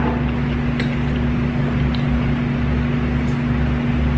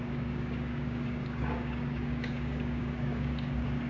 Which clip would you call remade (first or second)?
second